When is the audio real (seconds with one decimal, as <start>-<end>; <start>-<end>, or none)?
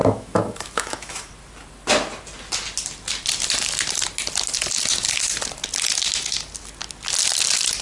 1.3-7.8